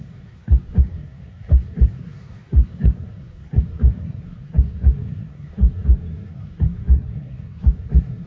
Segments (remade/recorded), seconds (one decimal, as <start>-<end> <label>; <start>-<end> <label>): 0.0-8.3 remade